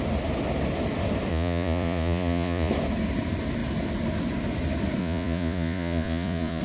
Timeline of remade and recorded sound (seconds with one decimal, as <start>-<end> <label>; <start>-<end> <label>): 0.0-1.3 recorded; 1.3-2.7 remade; 2.7-5.0 recorded; 5.0-6.6 remade